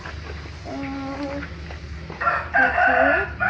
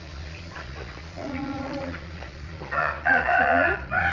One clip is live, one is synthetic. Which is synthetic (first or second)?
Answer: second